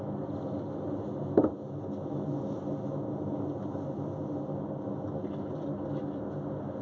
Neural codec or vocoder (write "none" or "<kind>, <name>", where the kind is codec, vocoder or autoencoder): none